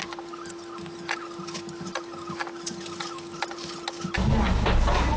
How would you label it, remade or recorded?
recorded